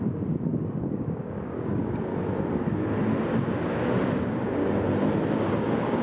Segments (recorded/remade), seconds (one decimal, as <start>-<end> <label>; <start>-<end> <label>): 0.0-2.1 remade; 2.1-3.3 recorded; 3.3-4.6 remade; 4.6-5.3 recorded; 5.3-6.0 remade